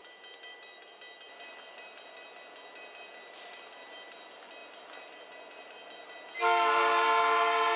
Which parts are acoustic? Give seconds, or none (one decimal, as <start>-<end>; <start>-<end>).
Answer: 0.0-7.8